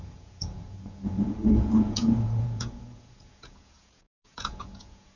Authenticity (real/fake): fake